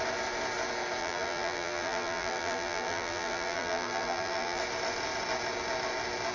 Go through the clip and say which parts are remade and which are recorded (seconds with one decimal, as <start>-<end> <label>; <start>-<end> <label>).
0.0-1.0 recorded; 1.0-4.6 remade; 4.6-6.3 recorded